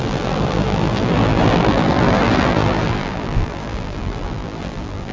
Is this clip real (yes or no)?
no